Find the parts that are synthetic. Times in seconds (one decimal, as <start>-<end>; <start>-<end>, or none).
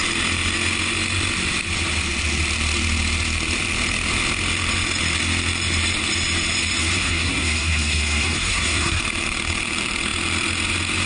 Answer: 6.8-9.0